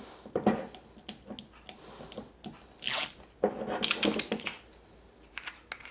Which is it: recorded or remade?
recorded